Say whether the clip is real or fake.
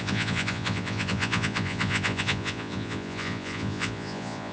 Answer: fake